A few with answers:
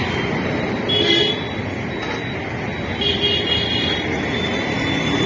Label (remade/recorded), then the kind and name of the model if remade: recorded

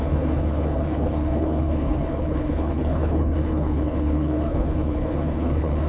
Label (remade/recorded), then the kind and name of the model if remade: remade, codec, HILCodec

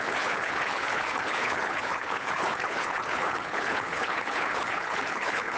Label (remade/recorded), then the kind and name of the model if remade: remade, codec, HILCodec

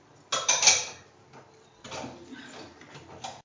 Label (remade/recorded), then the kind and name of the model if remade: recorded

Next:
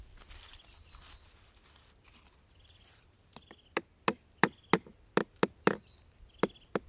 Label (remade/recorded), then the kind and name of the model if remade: recorded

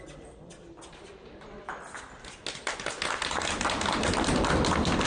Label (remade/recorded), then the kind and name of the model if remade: recorded